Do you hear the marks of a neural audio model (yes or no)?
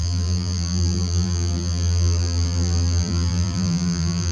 yes